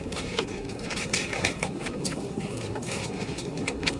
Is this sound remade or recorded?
remade